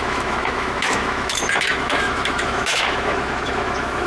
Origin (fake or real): fake